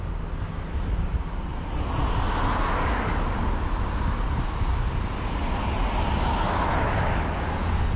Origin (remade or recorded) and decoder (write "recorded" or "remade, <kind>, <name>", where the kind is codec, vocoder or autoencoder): recorded